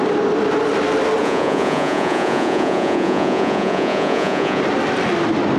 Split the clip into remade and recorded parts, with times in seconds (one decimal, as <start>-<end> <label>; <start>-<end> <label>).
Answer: 0.0-1.2 recorded; 1.2-4.6 remade; 4.6-5.6 recorded